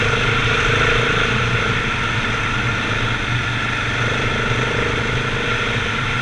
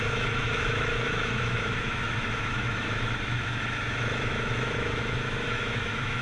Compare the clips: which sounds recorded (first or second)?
first